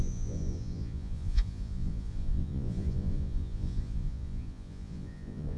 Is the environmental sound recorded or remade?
remade